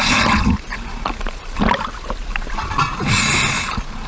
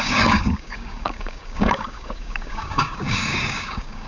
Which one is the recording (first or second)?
first